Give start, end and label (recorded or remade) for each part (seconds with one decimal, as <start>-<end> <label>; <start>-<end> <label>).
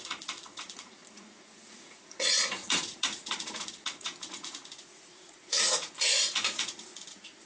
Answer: 0.0-7.5 remade